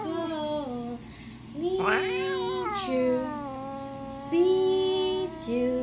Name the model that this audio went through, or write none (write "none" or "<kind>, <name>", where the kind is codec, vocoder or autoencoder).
none